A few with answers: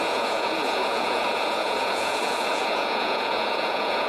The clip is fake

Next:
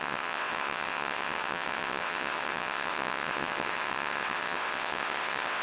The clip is fake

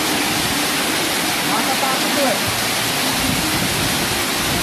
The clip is real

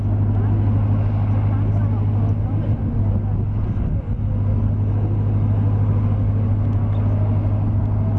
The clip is real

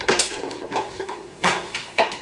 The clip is fake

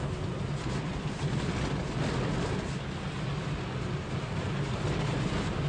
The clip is real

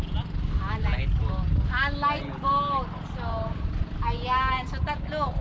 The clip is real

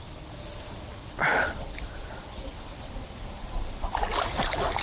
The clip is real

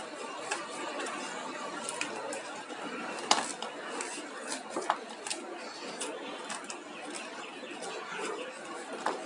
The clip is real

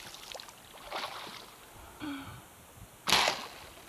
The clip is real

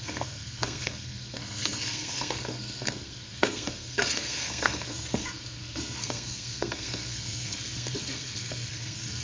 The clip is fake